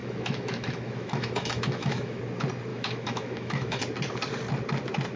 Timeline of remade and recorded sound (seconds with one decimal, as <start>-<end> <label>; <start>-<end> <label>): 0.0-2.2 remade; 2.2-2.7 recorded; 2.7-3.8 remade; 3.8-5.2 recorded